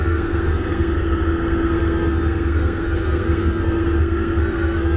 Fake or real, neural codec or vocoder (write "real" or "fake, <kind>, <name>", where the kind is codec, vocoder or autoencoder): fake, codec, SNAC